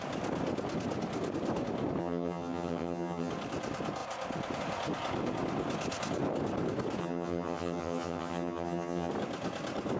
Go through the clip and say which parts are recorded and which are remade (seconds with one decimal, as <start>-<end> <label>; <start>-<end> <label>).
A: 0.0-2.0 recorded; 2.0-3.3 remade; 3.3-7.0 recorded; 7.0-9.1 remade; 9.1-10.0 recorded